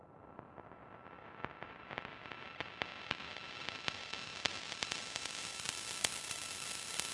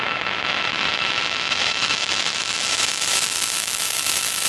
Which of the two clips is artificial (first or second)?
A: second